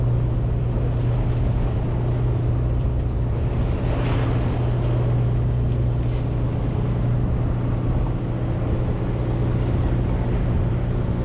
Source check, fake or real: real